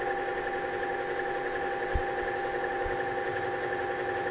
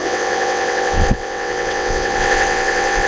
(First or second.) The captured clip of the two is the first